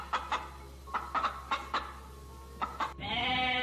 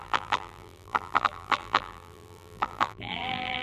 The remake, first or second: second